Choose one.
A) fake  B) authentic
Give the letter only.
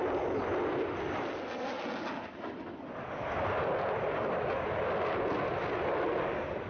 B